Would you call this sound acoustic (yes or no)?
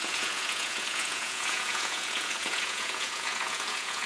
no